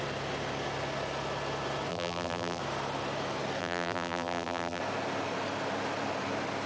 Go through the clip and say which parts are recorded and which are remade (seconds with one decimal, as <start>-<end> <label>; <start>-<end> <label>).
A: 0.0-1.9 recorded; 1.9-2.6 remade; 2.6-3.6 recorded; 3.6-4.8 remade; 4.8-6.7 recorded